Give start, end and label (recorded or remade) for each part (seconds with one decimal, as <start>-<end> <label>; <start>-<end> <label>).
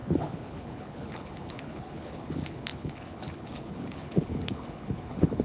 0.0-5.4 remade